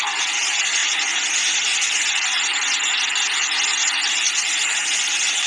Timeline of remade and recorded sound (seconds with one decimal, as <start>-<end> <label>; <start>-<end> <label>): 0.0-5.5 recorded